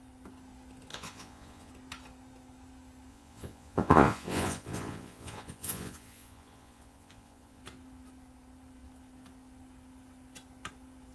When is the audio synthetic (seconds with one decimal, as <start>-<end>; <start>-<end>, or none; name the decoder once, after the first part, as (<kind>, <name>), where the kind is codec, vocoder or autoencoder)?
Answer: 0.9-1.7 (vocoder, Vocos); 3.1-7.6